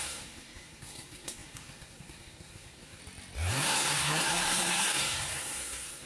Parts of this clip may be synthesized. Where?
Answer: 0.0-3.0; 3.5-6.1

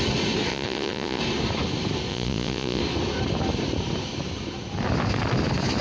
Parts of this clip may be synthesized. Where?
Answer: 0.5-1.2; 2.1-2.8

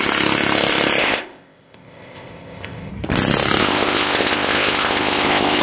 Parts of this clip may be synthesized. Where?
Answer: 1.0-2.9; 3.6-5.6